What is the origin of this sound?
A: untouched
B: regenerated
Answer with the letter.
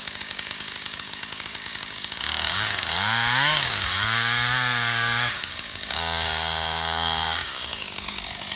B